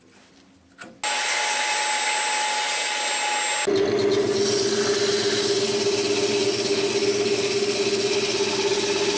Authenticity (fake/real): real